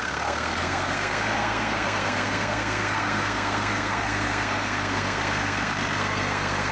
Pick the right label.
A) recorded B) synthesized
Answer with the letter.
B